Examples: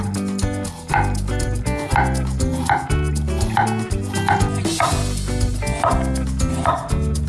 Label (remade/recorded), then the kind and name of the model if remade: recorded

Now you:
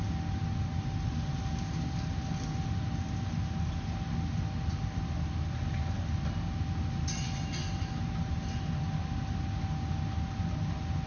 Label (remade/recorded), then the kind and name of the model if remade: recorded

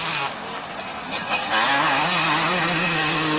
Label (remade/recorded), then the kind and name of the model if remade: recorded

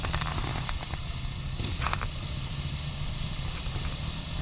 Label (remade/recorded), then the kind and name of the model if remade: recorded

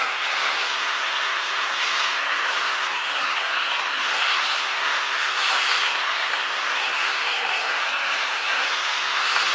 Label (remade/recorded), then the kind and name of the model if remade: remade, codec, SNAC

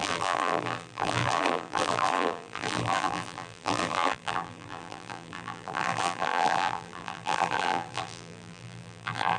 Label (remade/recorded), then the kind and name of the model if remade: remade, vocoder, BigVGAN v2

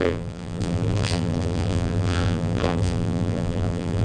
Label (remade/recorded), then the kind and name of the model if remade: remade, vocoder, BigVGAN v2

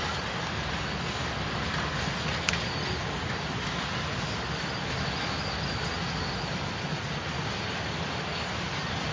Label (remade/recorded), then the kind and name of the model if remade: recorded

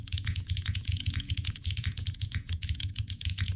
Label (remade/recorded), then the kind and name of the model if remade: remade, vocoder, Vocos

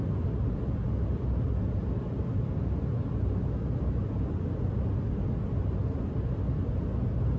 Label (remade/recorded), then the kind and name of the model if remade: recorded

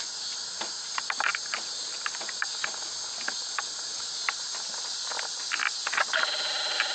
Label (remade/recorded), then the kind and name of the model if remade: recorded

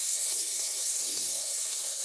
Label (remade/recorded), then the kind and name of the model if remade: remade, codec, SNAC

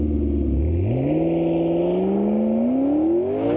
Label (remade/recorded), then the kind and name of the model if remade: recorded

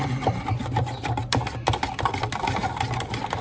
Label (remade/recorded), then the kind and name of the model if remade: recorded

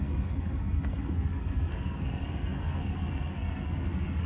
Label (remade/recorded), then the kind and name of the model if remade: remade, codec, SNAC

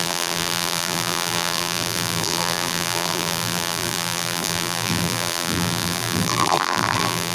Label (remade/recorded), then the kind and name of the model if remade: remade, vocoder, BigVGAN v2